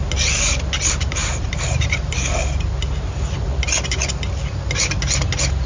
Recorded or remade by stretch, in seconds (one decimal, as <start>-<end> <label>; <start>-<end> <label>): 0.0-1.2 recorded; 1.2-2.1 remade; 2.1-5.7 recorded